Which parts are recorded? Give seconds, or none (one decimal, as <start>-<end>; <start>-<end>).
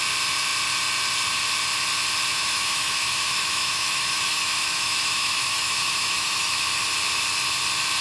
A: 0.0-2.3; 6.6-8.0